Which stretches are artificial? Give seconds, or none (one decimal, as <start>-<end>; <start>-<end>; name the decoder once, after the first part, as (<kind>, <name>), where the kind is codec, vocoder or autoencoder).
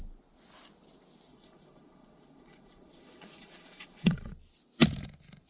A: 1.3-4.3 (vocoder, Vocos)